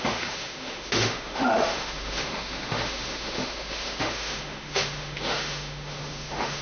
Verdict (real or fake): fake